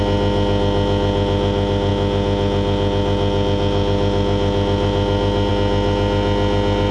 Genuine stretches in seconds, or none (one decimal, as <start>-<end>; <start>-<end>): 0.0-6.9